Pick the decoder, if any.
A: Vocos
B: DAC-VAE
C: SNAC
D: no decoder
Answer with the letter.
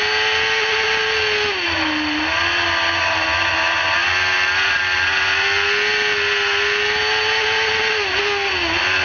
D